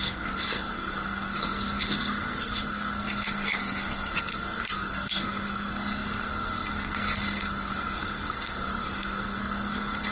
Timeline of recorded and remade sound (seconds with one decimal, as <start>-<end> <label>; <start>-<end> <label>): 0.0-10.1 remade